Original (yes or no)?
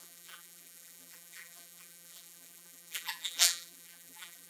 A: no